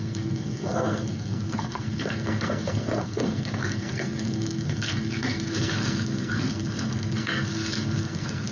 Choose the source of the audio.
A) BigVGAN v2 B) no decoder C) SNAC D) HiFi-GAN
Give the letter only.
C